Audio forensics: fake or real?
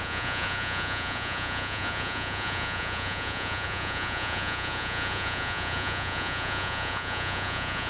fake